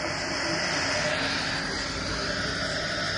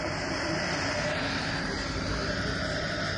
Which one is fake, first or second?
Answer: second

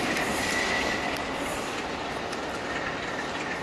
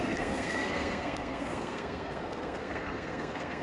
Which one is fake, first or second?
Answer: second